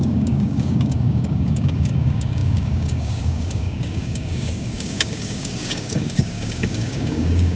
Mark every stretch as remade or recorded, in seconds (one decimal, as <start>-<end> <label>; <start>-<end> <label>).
0.0-7.6 remade